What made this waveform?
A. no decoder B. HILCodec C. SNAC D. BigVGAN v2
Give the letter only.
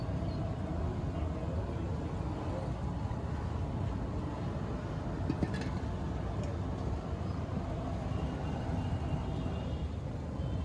A